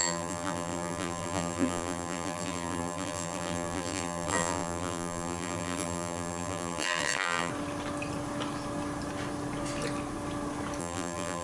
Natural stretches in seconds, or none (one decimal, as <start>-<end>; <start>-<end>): 7.5-10.8